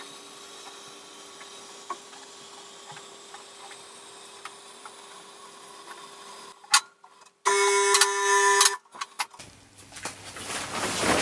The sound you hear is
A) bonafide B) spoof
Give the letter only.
A